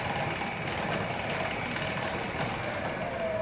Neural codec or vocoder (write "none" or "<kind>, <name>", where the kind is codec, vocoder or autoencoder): none